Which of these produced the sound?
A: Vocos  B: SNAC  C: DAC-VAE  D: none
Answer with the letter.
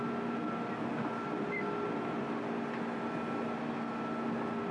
D